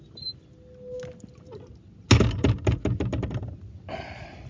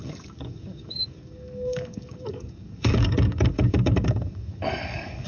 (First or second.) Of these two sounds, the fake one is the second